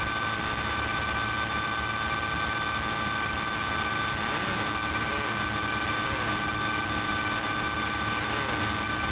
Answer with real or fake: real